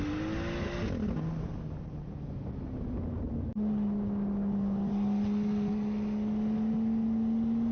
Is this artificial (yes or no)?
no